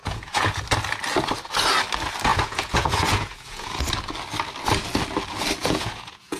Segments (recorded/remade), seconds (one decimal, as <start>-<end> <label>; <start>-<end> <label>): 0.0-0.6 remade; 0.6-2.3 recorded; 2.3-3.8 remade; 3.8-5.6 recorded; 5.6-6.4 remade